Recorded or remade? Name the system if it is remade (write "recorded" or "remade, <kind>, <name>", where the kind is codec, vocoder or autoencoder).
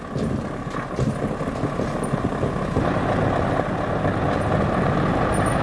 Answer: recorded